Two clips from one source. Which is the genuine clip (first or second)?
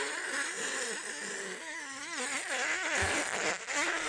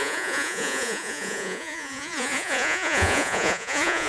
first